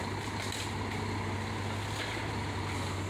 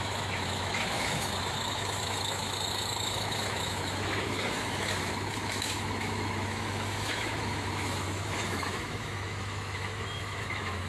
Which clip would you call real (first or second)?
first